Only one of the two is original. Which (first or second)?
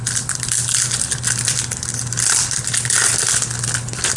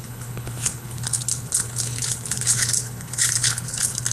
first